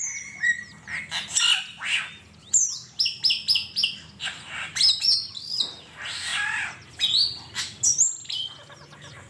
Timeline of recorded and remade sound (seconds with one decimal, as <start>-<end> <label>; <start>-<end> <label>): 0.0-9.3 recorded

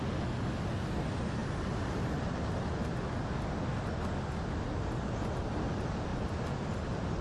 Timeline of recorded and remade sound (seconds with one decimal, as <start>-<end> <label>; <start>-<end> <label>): 0.0-6.1 recorded; 6.1-7.2 remade

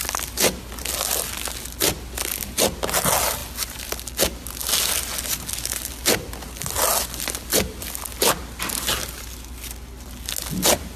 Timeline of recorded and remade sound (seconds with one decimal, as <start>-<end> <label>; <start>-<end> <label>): 0.0-11.0 recorded

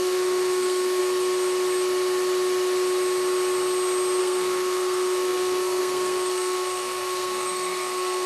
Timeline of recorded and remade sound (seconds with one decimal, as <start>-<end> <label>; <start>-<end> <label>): 0.0-1.0 remade; 1.0-4.2 recorded; 4.2-8.3 remade